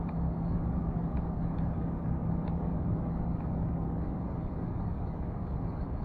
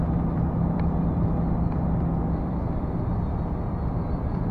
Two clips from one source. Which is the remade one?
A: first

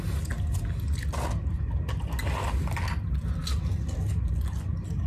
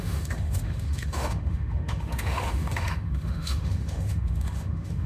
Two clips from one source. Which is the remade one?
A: second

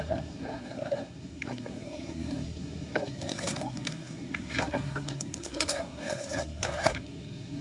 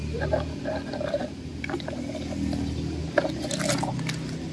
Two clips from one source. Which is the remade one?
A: first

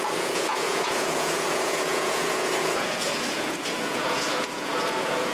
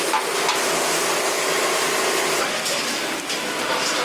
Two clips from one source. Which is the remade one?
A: first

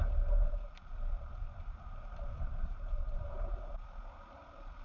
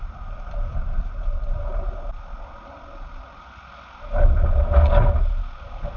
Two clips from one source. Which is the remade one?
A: first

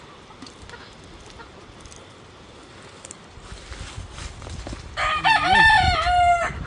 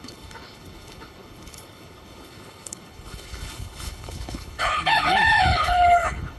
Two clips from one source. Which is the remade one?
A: second